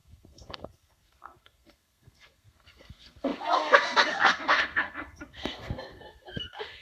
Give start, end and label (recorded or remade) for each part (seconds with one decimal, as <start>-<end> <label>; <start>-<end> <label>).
0.0-6.8 remade